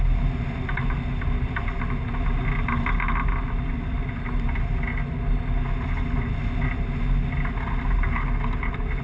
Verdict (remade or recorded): recorded